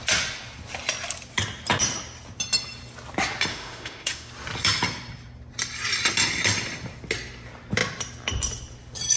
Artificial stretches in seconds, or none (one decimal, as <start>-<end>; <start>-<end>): 3.5-4.3

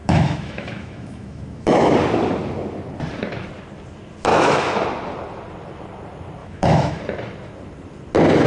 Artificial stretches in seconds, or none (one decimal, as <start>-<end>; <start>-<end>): 0.0-1.9; 4.3-4.8; 6.4-7.0

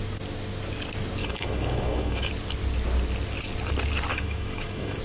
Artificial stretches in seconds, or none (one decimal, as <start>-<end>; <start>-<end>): 1.2-2.3; 4.1-5.0